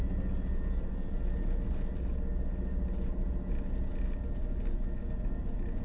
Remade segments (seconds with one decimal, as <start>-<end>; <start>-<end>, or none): none